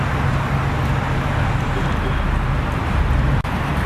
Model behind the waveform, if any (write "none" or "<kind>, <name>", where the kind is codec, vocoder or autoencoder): none